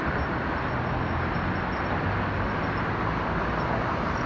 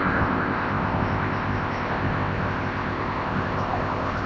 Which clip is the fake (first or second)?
second